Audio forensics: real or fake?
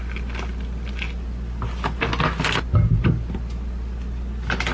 real